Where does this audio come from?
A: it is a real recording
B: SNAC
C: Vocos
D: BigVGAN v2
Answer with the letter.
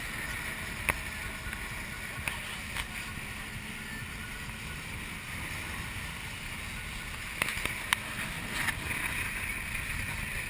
A